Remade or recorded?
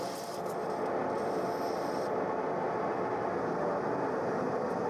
recorded